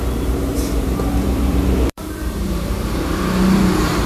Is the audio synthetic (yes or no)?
yes